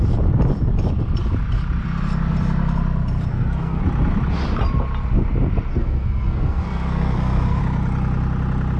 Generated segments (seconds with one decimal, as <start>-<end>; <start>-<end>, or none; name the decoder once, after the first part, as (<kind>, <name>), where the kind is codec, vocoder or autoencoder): 3.3-3.8 (codec, SNAC); 5.7-7.6